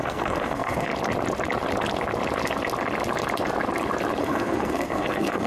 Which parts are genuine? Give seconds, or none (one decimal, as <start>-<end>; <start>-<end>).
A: 0.9-4.2